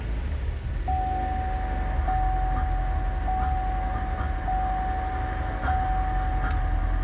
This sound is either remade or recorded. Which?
recorded